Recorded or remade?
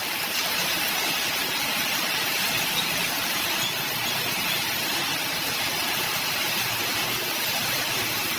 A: remade